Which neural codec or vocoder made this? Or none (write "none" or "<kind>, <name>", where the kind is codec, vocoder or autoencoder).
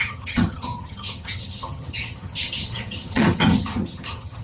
vocoder, HiFi-GAN